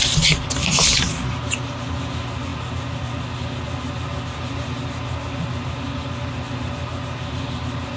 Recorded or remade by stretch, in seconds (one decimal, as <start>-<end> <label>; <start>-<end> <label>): 0.0-8.0 recorded